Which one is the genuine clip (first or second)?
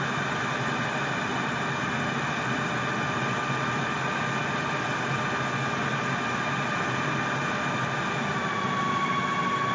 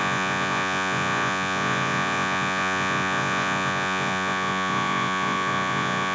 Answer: first